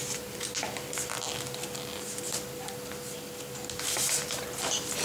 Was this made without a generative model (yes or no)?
yes